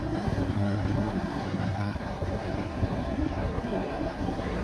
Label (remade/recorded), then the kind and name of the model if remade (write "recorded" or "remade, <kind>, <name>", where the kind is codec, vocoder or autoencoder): remade, codec, SNAC